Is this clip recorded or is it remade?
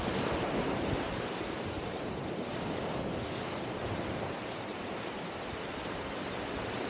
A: remade